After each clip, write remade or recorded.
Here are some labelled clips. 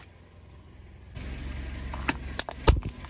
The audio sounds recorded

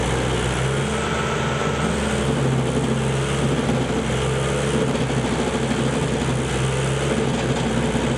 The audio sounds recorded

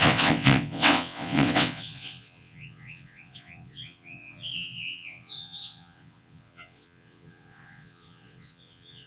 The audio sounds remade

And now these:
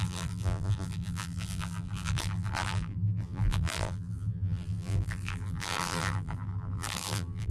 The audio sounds remade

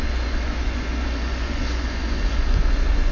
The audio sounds remade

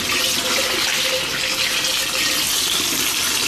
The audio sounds recorded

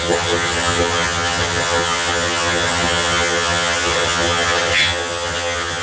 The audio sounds remade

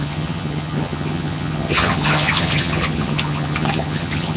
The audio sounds remade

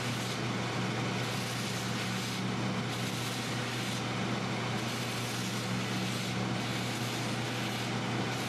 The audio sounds recorded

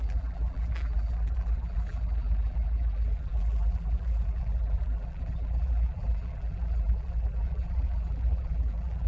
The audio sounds remade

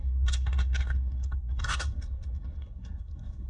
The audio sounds remade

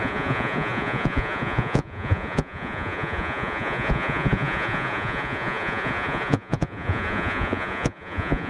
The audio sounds remade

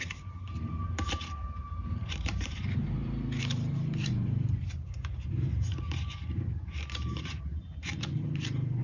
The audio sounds remade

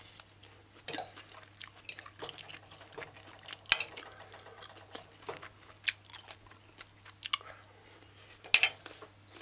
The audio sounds recorded